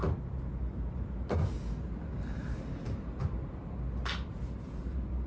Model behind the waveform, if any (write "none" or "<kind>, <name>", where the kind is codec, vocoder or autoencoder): none